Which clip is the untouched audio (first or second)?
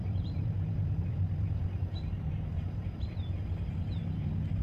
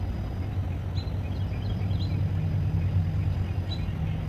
second